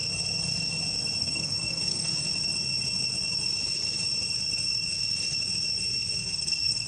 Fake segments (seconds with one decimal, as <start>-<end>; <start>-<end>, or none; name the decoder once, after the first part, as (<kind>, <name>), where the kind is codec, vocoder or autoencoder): 1.2-2.1 (codec, SNAC); 6.2-6.9